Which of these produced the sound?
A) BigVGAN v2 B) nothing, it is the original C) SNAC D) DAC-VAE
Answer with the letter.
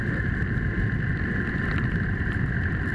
A